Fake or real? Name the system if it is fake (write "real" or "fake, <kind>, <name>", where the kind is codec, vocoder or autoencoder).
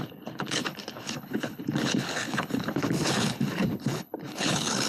fake, codec, HILCodec